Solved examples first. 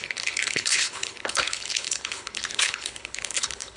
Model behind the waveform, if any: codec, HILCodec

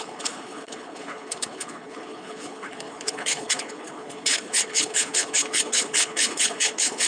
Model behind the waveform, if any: codec, HILCodec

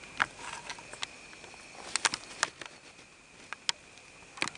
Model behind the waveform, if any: none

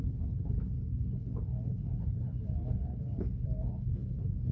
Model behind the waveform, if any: codec, HILCodec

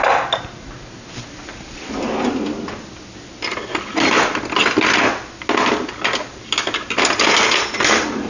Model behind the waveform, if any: none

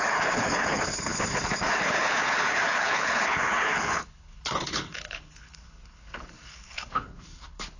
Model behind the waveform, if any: codec, HILCodec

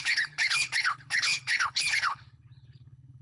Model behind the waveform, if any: codec, HILCodec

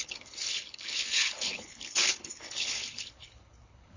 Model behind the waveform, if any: codec, HILCodec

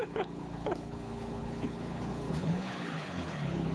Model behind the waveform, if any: codec, HILCodec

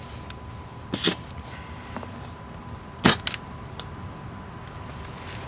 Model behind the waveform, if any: none